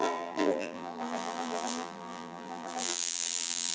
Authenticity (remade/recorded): remade